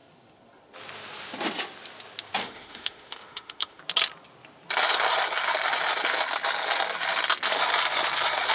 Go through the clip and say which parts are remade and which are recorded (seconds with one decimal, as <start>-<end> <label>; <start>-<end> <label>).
0.0-2.4 recorded; 2.4-3.8 remade; 3.8-8.5 recorded